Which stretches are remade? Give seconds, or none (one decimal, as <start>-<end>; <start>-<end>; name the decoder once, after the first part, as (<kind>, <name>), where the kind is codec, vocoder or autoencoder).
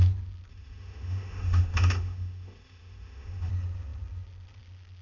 0.5-3.5 (autoencoder, DAC-VAE)